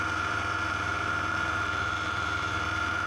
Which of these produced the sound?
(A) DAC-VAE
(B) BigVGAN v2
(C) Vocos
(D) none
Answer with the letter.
B